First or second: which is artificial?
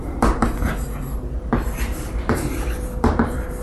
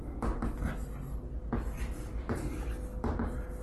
first